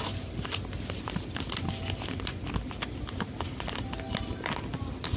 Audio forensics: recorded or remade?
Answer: recorded